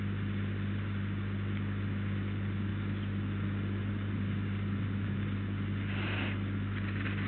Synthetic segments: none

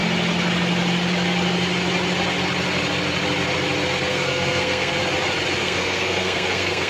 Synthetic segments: 4.1-5.0 (codec, SNAC); 5.6-6.9